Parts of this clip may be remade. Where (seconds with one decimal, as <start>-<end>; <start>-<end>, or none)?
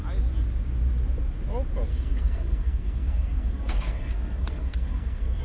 1.9-5.4